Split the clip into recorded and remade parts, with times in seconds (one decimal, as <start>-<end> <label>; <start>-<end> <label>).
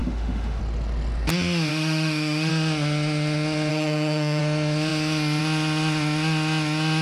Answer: 0.0-0.6 remade; 0.6-1.7 recorded; 1.7-2.5 remade; 2.5-3.7 recorded; 3.7-4.4 remade; 4.4-7.0 recorded